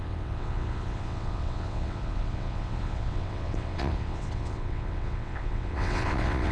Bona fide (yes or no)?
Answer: no